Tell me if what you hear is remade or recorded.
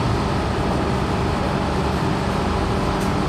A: recorded